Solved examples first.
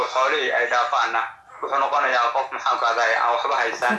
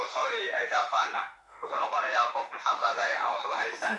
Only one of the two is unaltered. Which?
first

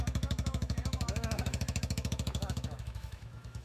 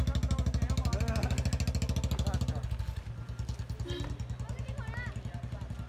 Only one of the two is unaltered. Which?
second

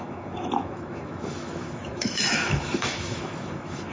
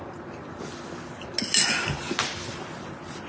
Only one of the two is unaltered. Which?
second